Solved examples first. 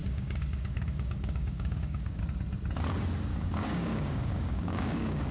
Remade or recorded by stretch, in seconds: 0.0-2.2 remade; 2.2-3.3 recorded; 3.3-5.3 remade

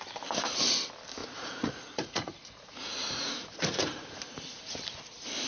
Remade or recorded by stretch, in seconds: 0.0-1.2 recorded; 1.2-4.2 remade; 4.2-5.5 recorded

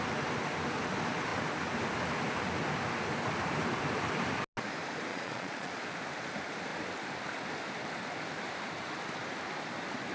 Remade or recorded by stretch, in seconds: 0.0-5.1 recorded; 5.1-5.7 remade; 5.7-10.1 recorded

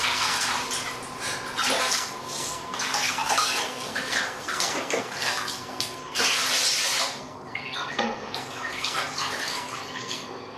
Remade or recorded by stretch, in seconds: 0.0-0.5 remade; 0.5-1.8 recorded; 1.8-6.4 remade; 6.4-7.0 recorded; 7.0-10.6 remade

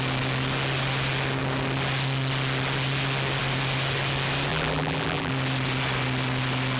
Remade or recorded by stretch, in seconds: 0.0-4.5 recorded; 4.5-5.3 remade; 5.3-6.8 recorded

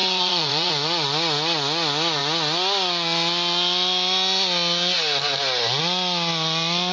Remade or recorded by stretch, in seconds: 0.0-0.7 remade; 0.7-6.9 recorded

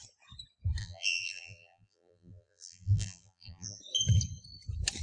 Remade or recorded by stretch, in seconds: 0.0-0.8 recorded; 0.8-3.8 remade; 3.8-5.0 recorded

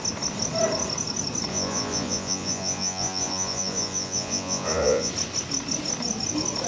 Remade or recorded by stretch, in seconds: 0.0-1.5 recorded; 1.5-5.1 remade; 5.1-6.7 recorded